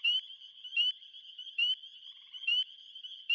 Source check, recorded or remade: remade